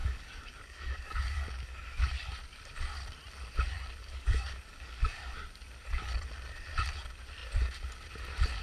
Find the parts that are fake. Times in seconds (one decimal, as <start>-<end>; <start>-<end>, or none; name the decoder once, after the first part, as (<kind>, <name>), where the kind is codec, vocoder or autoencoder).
0.0-2.3 (codec, DAC); 4.0-5.3